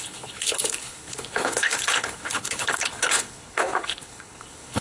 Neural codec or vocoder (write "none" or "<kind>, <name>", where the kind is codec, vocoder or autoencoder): codec, HILCodec